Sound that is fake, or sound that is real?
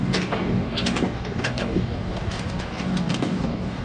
fake